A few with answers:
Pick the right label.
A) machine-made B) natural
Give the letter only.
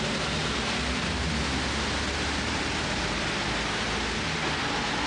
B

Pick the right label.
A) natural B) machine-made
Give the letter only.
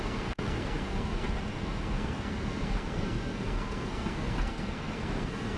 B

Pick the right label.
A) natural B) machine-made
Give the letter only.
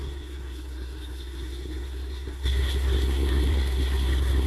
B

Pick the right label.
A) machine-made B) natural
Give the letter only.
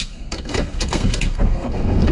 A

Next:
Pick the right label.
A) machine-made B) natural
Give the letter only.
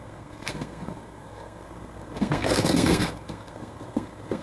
A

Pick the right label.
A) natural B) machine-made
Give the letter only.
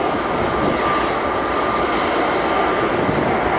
A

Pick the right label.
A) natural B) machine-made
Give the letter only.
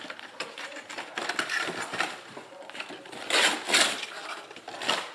A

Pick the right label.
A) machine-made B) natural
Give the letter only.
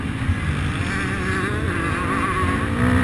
B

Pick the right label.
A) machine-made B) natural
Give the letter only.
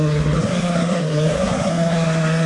A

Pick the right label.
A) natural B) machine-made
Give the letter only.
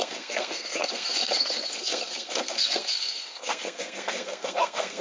B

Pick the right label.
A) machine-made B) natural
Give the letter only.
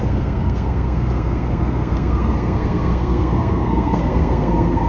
A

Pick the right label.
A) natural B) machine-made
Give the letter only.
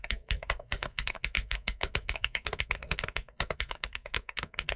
B